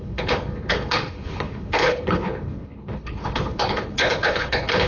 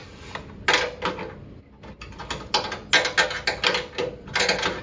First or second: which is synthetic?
first